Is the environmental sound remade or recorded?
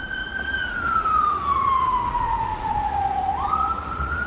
remade